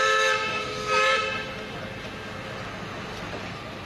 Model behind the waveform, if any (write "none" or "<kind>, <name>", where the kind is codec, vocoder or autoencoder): none